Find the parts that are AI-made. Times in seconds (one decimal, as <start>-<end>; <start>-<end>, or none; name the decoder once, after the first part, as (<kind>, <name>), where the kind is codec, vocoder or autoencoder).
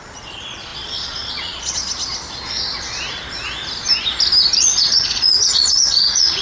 0.0-1.8 (vocoder, Vocos); 4.6-6.4